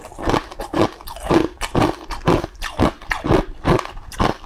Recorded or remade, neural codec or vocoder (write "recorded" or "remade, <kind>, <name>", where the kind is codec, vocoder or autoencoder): remade, vocoder, BigVGAN v2